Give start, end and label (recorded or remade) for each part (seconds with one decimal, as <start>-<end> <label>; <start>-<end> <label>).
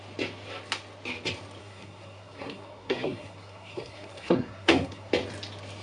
0.0-1.6 recorded; 1.6-5.1 remade; 5.1-5.8 recorded